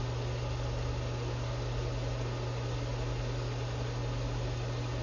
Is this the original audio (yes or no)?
yes